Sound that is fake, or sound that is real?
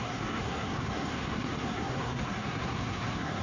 fake